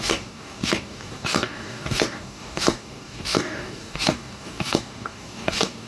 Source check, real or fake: fake